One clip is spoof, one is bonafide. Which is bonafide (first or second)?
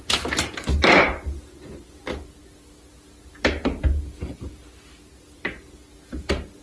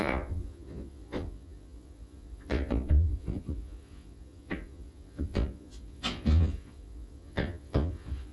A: first